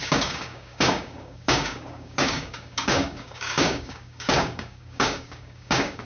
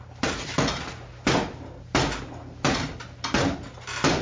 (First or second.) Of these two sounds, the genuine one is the second